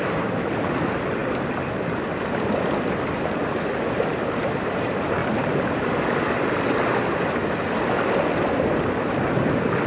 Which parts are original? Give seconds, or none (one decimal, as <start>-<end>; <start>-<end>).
0.0-9.9